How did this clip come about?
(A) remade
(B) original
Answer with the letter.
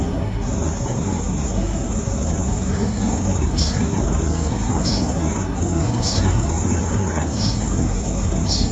A